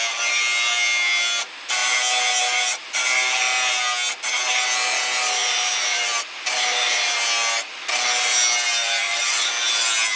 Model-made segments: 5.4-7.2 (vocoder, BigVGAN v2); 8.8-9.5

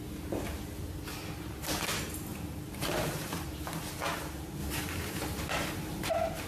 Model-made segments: 2.3-3.8 (vocoder, BigVGAN v2); 4.6-6.1